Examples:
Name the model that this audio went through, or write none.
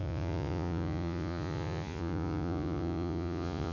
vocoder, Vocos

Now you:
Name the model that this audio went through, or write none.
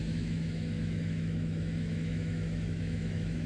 autoencoder, DAC-VAE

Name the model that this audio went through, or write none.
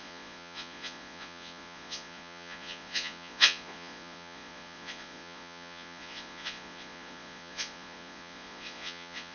vocoder, Vocos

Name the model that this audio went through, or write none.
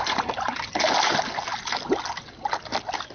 none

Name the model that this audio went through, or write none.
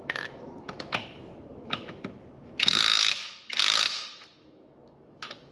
autoencoder, DAC-VAE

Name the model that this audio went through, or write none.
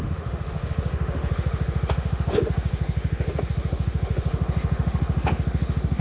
autoencoder, DAC-VAE